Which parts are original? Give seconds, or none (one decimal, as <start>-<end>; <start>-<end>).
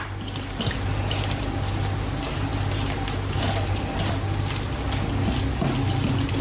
0.0-6.4